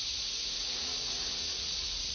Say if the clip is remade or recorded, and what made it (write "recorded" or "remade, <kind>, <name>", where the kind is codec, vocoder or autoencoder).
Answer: remade, vocoder, Vocos